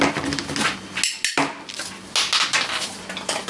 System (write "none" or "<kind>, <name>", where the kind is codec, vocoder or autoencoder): none